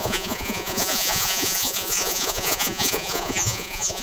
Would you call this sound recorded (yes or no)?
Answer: no